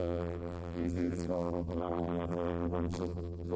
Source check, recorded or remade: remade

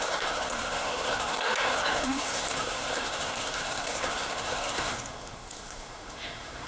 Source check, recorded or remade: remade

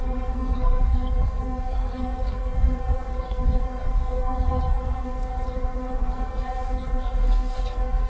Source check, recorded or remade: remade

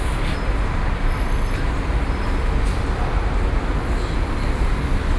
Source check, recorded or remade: recorded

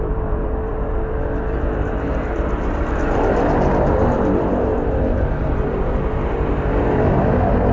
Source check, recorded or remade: remade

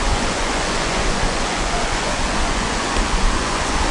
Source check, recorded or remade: remade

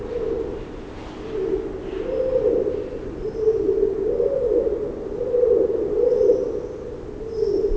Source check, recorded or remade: recorded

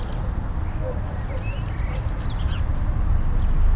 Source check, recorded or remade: recorded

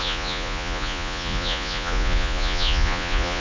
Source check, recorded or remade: remade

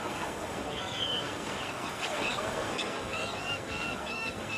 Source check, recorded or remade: remade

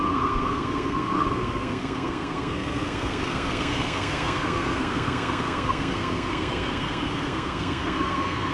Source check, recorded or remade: remade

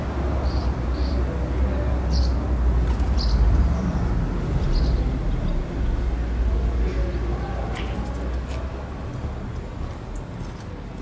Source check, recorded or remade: recorded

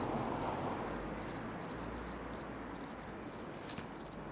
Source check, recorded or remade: recorded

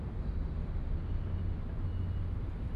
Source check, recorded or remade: recorded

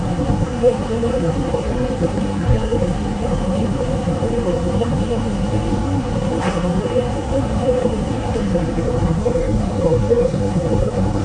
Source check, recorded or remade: remade